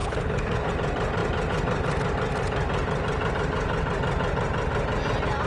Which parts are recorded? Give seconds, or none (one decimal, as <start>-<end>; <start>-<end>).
0.7-5.5